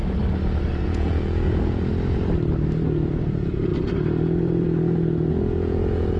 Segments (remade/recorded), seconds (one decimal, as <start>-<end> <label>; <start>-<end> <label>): 0.0-0.8 recorded; 0.8-1.9 remade; 1.9-3.2 recorded; 3.2-3.7 remade; 3.7-5.3 recorded; 5.3-6.2 remade